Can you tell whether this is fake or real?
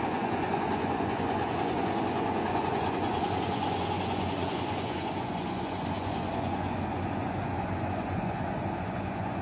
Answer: fake